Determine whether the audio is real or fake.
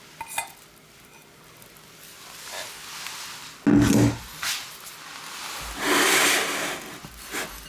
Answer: real